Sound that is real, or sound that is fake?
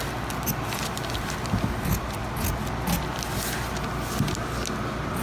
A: real